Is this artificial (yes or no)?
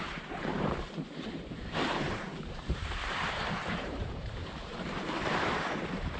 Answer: yes